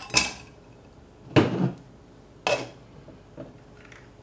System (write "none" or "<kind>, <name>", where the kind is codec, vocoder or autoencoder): none